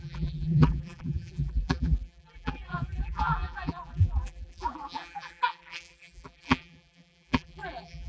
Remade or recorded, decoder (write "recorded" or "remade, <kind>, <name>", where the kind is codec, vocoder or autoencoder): remade, vocoder, BigVGAN v2